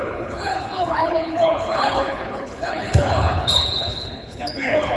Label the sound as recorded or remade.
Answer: remade